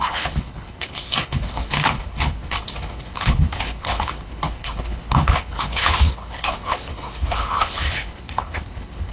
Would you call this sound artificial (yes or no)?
yes